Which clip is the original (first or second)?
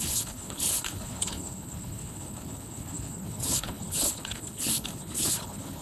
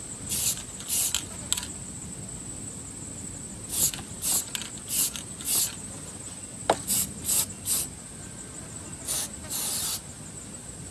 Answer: second